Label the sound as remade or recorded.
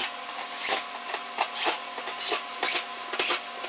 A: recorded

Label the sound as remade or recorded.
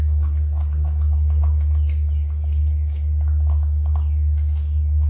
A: recorded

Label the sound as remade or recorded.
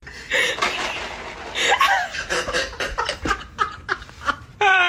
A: remade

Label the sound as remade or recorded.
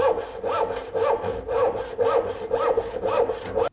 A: recorded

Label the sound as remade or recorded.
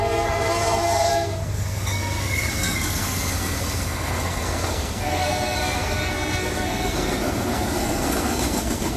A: remade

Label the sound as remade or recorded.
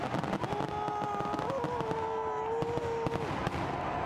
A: recorded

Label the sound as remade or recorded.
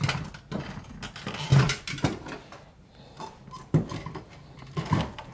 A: recorded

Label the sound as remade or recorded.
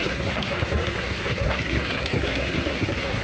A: remade